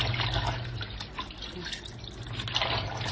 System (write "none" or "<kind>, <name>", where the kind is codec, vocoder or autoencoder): none